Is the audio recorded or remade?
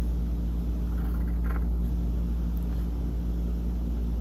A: recorded